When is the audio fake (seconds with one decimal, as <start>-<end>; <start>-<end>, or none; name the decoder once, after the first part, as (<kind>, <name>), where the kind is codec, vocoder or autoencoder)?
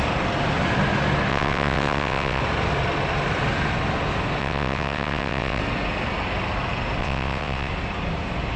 1.3-2.4 (vocoder, WaveNeXt); 4.4-5.6; 7.0-7.7